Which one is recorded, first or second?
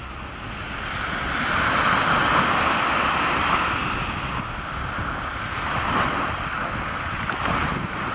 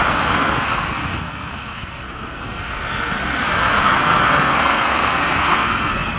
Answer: first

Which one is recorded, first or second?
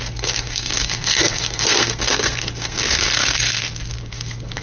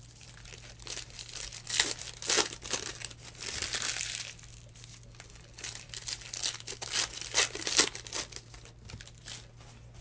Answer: second